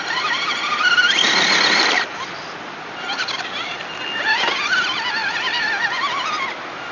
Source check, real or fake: real